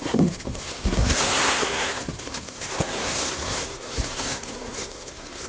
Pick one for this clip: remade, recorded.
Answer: remade